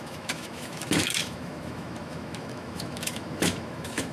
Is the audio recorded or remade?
remade